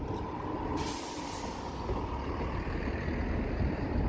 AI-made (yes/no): no